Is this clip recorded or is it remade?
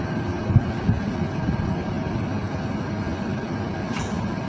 recorded